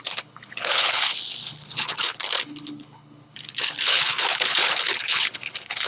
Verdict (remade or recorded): remade